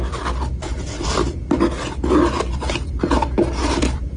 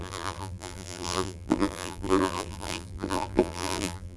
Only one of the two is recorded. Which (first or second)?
first